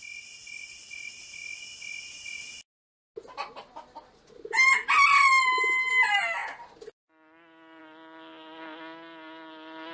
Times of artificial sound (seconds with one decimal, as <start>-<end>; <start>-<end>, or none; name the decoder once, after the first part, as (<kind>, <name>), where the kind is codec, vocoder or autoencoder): none